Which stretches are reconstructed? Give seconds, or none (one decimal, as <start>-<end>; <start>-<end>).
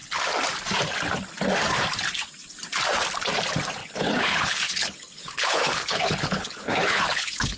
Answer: 3.8-7.6